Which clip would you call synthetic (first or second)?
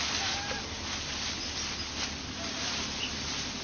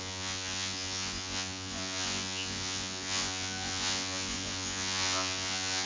second